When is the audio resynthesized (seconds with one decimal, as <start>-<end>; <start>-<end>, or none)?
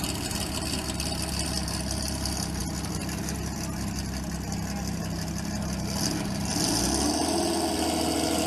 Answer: none